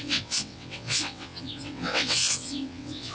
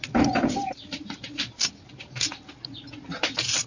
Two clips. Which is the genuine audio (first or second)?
second